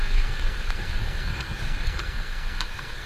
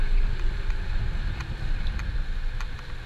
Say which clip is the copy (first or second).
first